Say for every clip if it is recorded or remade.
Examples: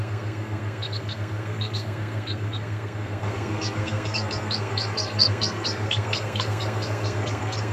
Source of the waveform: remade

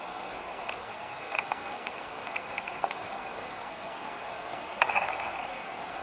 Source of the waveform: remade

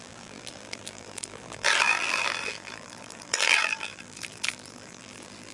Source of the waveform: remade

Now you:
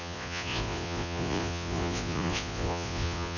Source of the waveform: remade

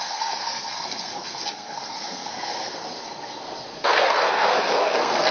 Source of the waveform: remade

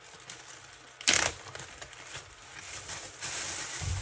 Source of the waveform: recorded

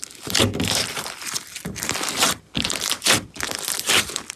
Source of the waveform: remade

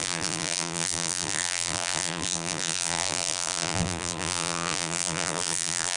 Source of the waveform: remade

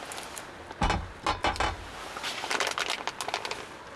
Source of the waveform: recorded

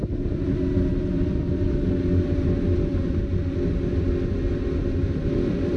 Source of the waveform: recorded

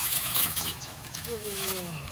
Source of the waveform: remade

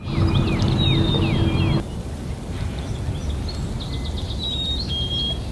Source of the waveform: recorded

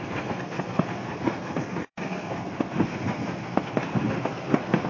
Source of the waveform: remade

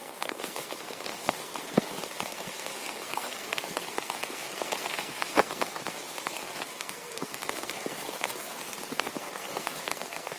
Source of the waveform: remade